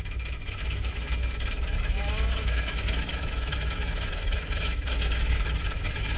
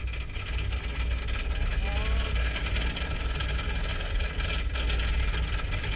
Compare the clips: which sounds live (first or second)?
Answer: second